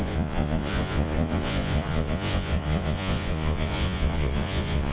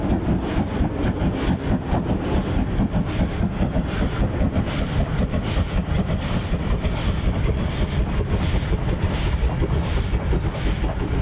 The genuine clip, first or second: second